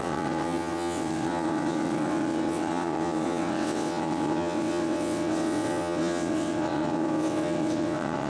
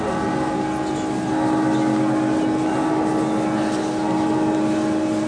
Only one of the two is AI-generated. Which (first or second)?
first